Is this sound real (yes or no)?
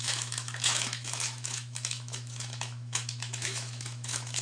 no